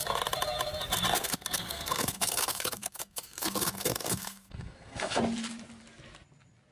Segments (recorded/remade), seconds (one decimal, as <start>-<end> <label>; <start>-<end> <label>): 0.0-1.2 recorded; 1.2-5.2 remade; 5.2-6.7 recorded